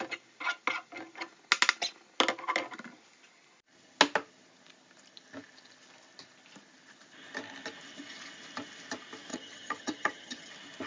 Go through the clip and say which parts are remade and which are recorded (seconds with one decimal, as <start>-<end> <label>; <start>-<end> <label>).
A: 0.0-9.3 recorded; 9.3-10.5 remade; 10.5-10.9 recorded